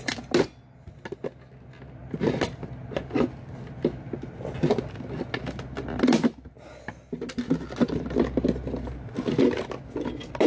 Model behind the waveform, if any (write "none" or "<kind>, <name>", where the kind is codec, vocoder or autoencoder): none